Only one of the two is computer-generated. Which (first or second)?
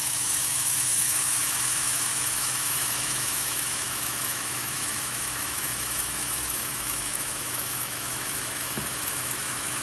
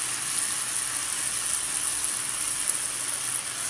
first